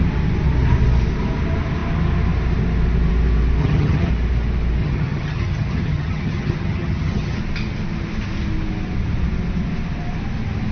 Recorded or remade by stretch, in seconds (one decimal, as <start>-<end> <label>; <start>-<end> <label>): 0.0-3.6 recorded; 3.6-4.1 remade; 4.1-4.8 recorded; 4.8-7.4 remade; 7.4-10.7 recorded